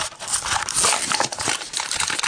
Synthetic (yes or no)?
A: no